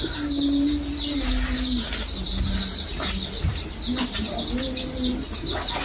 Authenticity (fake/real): real